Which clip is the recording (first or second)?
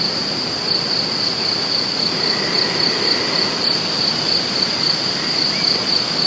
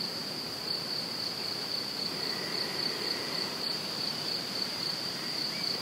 first